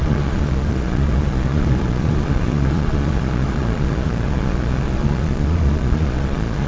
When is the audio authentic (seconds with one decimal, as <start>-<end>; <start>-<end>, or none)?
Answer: none